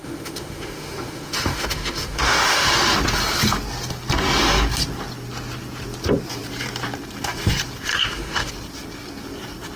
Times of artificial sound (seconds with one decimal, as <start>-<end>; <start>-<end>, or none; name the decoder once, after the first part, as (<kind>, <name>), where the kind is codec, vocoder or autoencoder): 0.0-2.7 (autoencoder, DAC-VAE); 7.9-8.5